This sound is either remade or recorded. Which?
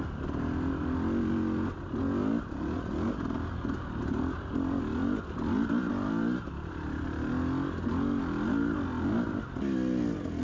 recorded